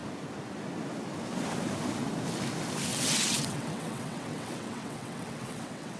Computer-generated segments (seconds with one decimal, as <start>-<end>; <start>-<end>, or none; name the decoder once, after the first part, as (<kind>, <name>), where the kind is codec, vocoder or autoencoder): 2.9-6.0 (vocoder, WaveNeXt)